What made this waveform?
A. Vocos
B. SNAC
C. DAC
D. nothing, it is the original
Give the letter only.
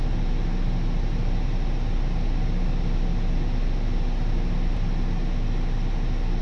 D